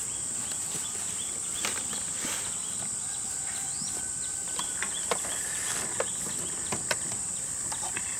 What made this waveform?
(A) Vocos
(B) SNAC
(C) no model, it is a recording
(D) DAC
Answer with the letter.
C